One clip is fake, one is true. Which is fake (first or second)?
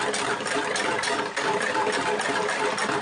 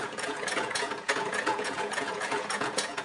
second